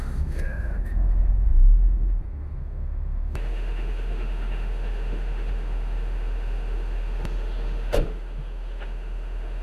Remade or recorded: remade